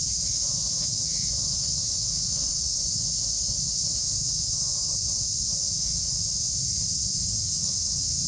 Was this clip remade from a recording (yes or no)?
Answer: yes